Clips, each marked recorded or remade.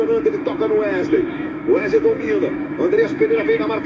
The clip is remade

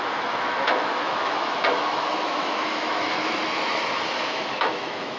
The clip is remade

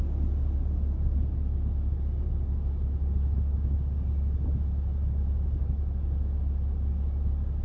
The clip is recorded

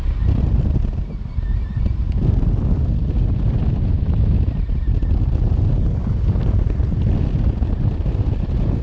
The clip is recorded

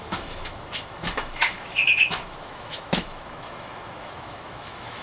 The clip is remade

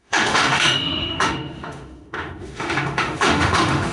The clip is remade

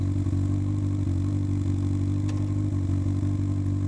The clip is recorded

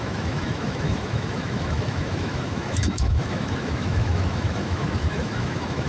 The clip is remade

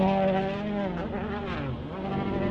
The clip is recorded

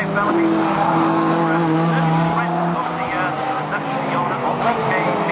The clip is recorded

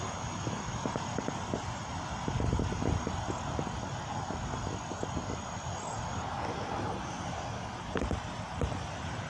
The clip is recorded